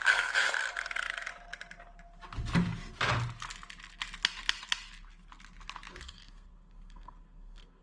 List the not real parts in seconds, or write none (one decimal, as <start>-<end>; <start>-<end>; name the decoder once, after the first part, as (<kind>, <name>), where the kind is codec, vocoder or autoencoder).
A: 0.0-1.3 (codec, SNAC); 6.0-7.8

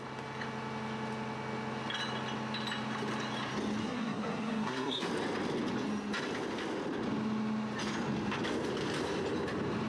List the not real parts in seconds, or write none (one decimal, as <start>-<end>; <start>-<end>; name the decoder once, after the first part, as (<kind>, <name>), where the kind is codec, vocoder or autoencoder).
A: 3.8-5.1 (codec, SNAC)

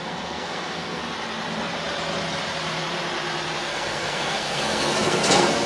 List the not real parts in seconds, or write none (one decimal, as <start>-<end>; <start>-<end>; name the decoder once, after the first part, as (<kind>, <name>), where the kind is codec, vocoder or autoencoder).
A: 0.0-1.0 (codec, SNAC); 3.7-5.7

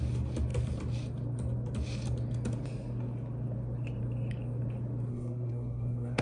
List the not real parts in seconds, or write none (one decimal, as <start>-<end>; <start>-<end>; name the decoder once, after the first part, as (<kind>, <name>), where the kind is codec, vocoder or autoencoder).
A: 5.1-6.2 (codec, SNAC)